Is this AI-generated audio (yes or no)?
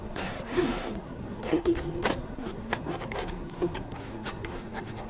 yes